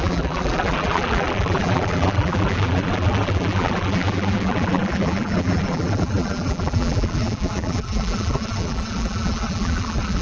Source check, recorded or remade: remade